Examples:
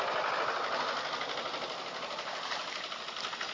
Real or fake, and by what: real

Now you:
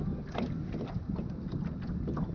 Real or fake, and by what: real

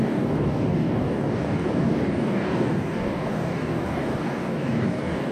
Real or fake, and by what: fake, codec, DAC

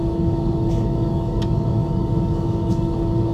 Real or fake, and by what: fake, codec, DAC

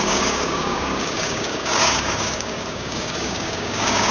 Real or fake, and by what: fake, codec, DAC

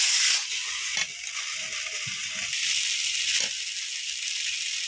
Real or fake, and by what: real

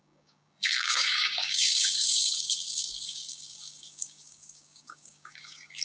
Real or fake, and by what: fake, codec, DAC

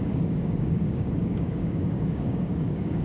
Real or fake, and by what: fake, codec, DAC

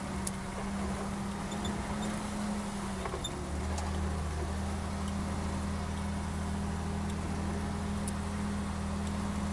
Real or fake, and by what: real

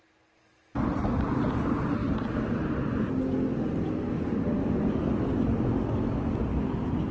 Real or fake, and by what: real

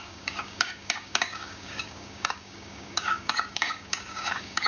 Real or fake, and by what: fake, codec, DAC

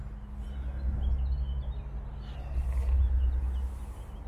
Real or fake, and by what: real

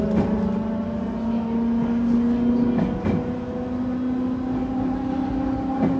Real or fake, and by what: real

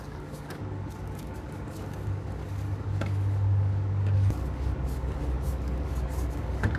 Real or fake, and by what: fake, codec, DAC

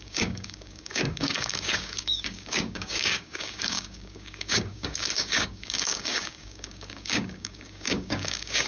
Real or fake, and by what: fake, codec, DAC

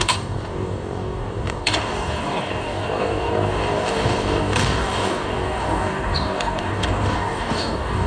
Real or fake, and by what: fake, codec, DAC